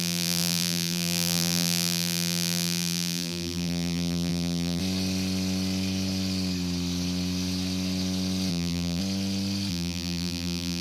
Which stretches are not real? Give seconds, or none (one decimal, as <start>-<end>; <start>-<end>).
0.0-4.8; 8.5-9.0; 9.7-10.8